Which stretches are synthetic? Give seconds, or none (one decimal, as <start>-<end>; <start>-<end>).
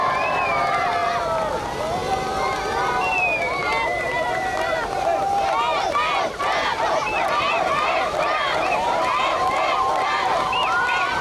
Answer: 0.0-5.1; 5.9-11.2